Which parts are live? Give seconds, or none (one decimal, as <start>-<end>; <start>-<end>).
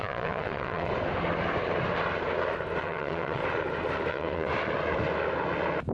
0.9-2.8; 3.4-4.1; 4.5-5.9